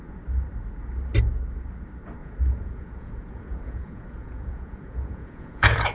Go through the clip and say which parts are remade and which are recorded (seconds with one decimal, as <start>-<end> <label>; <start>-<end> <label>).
0.0-2.2 recorded; 2.2-5.9 remade